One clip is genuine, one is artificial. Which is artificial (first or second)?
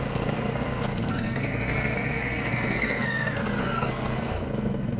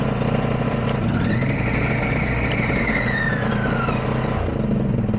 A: first